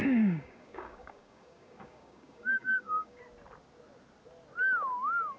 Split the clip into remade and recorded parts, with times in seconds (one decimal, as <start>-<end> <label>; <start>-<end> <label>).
0.0-3.2 remade; 3.2-5.4 recorded